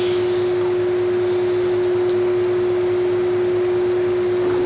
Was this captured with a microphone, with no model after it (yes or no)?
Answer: yes